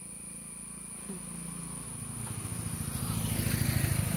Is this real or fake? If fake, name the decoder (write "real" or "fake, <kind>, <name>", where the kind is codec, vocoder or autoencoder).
real